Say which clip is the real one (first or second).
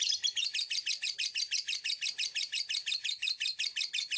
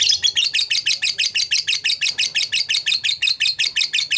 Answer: second